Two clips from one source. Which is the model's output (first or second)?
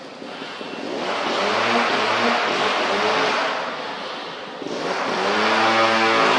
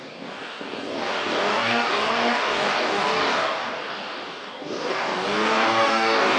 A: second